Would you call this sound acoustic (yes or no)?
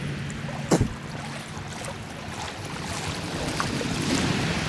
yes